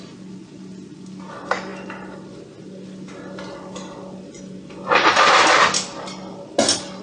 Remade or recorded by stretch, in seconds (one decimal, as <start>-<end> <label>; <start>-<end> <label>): 0.0-7.0 recorded